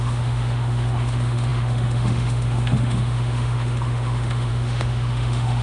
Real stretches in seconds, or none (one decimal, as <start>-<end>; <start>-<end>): none